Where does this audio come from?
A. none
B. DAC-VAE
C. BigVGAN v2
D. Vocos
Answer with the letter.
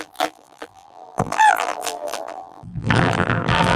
C